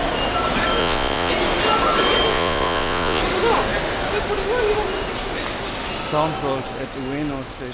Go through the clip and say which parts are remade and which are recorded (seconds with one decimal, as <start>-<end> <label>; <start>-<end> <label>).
0.0-0.8 recorded; 0.8-1.3 remade; 1.3-2.3 recorded; 2.3-3.2 remade; 3.2-7.7 recorded